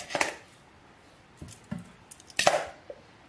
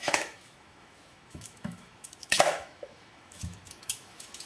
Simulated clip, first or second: second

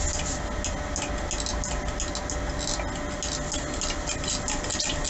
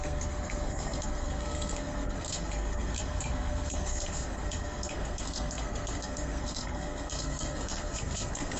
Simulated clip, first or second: second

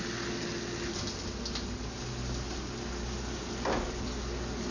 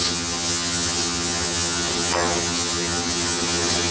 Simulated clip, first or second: second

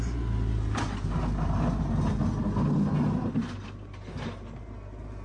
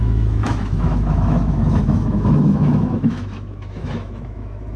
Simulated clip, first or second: second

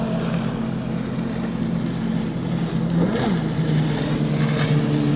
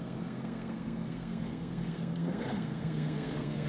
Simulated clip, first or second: second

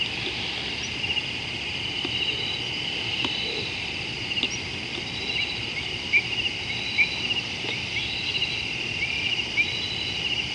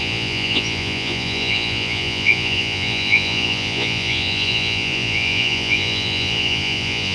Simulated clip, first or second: second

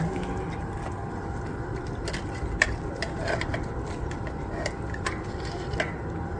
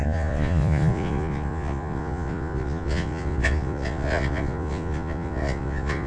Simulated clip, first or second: second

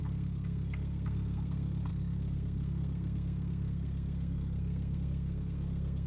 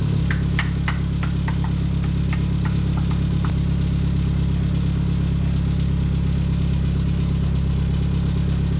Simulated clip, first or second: first